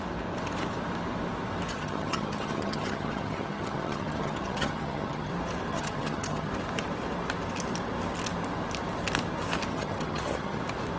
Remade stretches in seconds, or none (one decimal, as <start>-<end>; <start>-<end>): 1.7-5.3; 5.7-6.5; 9.7-10.6

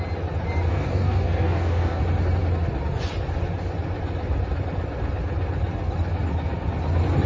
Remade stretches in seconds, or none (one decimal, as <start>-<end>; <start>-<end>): 0.7-2.0

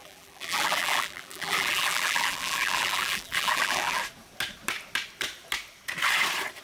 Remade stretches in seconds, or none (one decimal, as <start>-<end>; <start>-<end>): 0.0-4.0

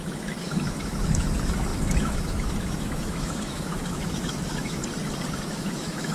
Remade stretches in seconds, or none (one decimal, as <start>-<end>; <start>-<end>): 0.0-4.8; 5.5-6.1

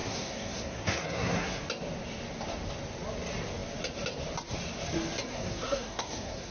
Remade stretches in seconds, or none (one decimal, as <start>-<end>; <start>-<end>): 0.0-1.6; 5.3-6.5

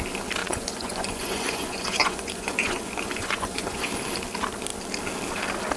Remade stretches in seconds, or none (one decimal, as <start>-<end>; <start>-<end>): 0.4-3.9

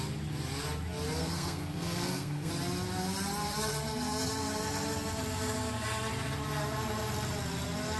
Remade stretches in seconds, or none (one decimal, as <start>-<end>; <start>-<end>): 1.2-2.5

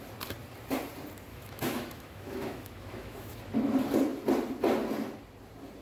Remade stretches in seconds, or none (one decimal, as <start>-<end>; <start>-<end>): 1.3-3.4